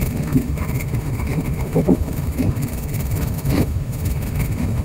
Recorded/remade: remade